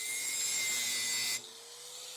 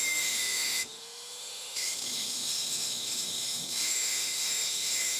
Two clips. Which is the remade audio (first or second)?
second